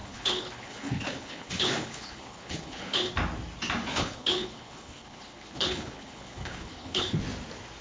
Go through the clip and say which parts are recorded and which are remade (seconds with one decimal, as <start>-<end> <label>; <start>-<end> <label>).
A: 0.0-3.1 remade; 3.1-3.9 recorded; 3.9-7.2 remade; 7.2-7.8 recorded